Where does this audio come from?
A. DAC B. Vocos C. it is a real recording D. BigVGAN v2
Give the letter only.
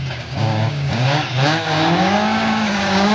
A